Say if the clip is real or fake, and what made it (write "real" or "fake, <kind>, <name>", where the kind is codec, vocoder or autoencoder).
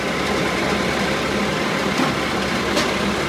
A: fake, vocoder, BigVGAN v2